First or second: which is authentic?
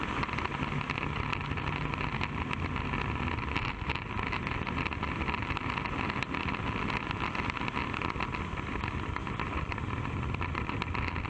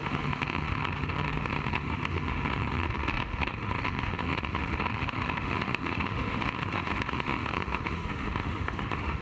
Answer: first